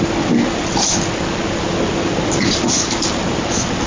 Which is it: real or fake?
real